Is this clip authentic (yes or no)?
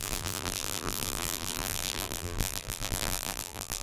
no